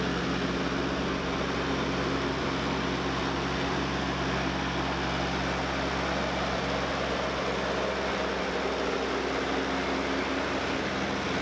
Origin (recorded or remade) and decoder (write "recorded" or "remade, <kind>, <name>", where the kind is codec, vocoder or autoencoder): recorded